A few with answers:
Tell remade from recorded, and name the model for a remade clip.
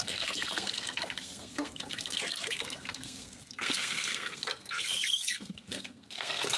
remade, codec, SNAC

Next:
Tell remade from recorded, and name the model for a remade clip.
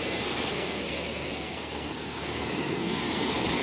remade, codec, SNAC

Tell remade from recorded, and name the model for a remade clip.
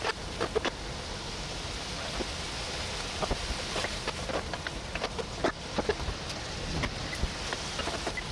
recorded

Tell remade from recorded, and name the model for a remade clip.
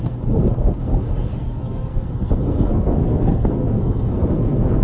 remade, codec, SNAC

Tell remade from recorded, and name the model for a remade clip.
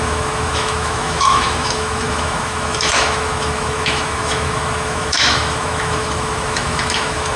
remade, autoencoder, DAC-VAE